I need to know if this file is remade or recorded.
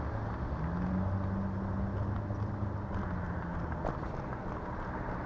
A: recorded